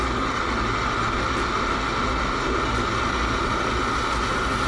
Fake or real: real